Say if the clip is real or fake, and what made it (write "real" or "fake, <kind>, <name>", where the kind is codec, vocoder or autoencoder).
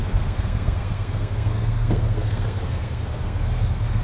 fake, codec, SNAC